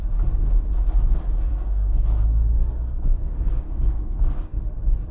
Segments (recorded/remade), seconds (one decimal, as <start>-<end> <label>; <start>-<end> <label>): 0.0-1.5 recorded; 1.5-4.6 remade; 4.6-5.1 recorded